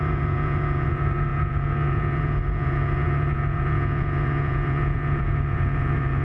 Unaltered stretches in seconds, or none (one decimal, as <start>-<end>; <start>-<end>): none